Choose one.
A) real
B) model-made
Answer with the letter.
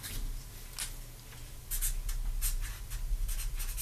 A